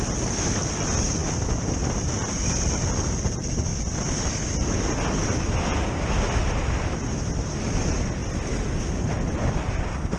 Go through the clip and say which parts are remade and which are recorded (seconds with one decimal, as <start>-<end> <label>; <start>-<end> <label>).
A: 0.0-10.2 recorded